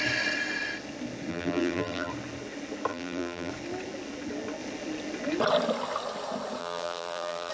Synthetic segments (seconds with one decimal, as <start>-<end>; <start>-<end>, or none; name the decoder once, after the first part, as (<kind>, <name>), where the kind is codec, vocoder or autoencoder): 1.3-2.1 (vocoder, BigVGAN v2); 2.9-3.5; 6.6-7.5